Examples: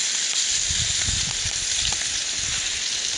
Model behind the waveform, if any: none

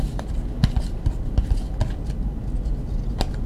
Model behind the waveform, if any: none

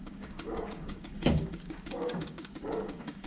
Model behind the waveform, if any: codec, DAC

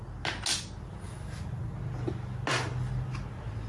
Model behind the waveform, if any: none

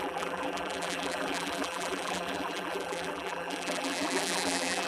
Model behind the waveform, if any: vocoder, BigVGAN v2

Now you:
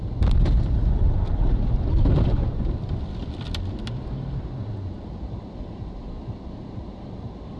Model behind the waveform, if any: vocoder, BigVGAN v2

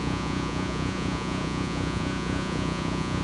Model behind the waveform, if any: vocoder, Vocos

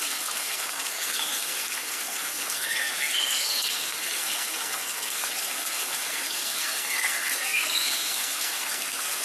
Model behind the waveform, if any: codec, SNAC